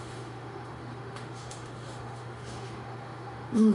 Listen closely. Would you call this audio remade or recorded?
remade